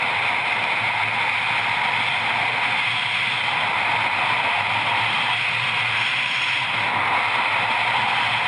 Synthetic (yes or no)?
no